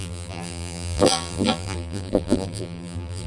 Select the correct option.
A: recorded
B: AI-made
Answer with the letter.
B